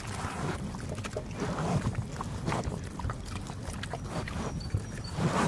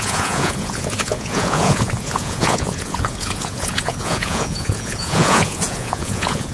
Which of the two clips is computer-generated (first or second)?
second